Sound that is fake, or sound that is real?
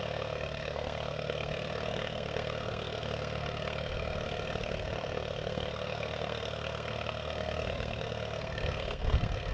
fake